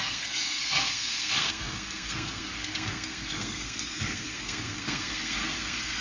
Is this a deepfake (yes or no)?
yes